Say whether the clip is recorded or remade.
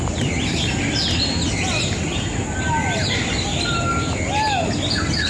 recorded